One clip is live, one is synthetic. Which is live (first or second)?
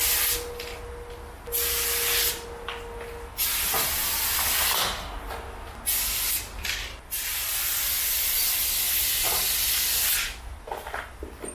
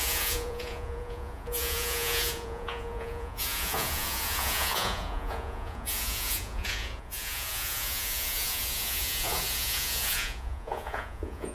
first